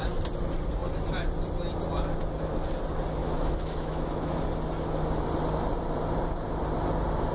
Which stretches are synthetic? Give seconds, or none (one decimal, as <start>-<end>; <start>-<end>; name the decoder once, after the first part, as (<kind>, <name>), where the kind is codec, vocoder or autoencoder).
3.2-4.4 (autoencoder, DAC-VAE)